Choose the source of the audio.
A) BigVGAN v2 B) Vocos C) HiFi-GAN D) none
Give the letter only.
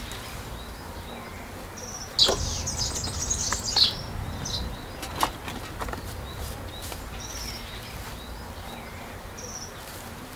D